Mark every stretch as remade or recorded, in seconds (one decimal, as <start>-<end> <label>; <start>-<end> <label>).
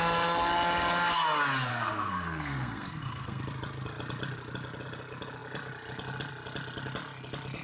0.0-1.7 recorded; 1.7-3.4 remade; 3.4-7.6 recorded